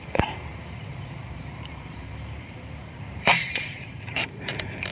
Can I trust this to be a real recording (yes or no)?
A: no